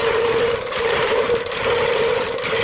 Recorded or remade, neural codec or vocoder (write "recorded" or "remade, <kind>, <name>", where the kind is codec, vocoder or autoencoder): remade, vocoder, BigVGAN v2